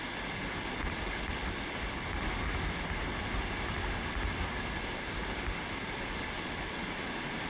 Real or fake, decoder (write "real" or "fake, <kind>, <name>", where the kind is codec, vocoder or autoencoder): real